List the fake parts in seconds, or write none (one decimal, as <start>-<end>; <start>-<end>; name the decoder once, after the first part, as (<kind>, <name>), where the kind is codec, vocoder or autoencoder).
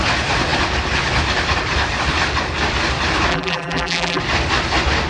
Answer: 3.3-4.2 (vocoder, BigVGAN v2)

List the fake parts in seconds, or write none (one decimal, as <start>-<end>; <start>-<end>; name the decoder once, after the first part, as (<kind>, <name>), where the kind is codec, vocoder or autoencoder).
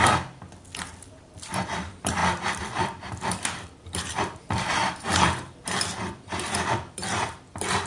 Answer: 0.0-7.9 (vocoder, BigVGAN v2)